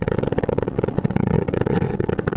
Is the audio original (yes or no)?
no